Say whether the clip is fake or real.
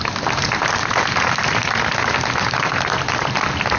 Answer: real